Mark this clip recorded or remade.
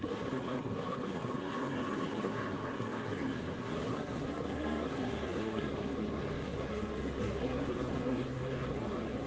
remade